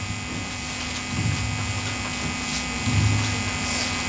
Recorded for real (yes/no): yes